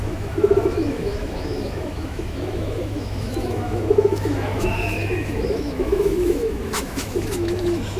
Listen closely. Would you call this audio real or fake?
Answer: fake